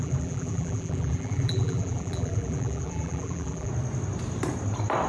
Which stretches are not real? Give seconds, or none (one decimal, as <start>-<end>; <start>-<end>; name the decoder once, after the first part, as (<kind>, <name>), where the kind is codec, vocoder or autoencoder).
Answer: 0.0-3.7 (vocoder, BigVGAN v2)